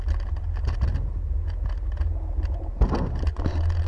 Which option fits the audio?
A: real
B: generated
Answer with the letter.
A